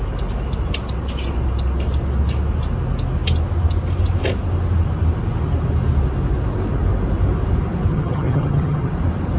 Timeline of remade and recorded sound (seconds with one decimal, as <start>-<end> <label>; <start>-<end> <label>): 0.0-7.9 recorded; 7.9-8.9 remade; 8.9-9.4 recorded